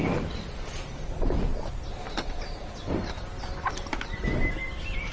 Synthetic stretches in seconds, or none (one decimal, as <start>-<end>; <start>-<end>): none